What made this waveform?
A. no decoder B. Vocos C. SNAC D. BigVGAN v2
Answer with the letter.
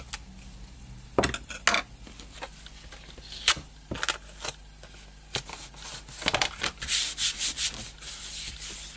A